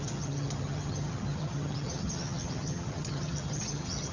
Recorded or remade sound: remade